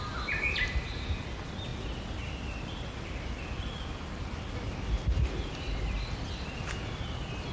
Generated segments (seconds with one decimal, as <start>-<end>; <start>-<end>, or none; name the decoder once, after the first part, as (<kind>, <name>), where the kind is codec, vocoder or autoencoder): none